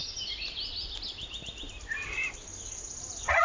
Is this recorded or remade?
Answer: recorded